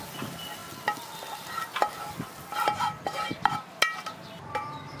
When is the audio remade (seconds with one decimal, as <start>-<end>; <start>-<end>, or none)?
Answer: none